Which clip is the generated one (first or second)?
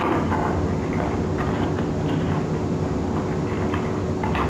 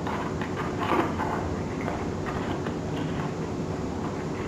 second